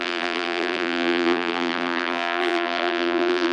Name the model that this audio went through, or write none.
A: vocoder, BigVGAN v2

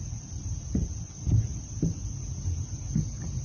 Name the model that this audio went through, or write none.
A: none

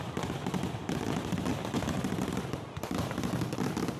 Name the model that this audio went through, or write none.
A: none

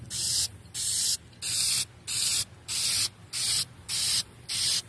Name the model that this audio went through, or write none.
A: none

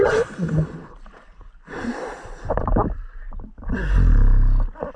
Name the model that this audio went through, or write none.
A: none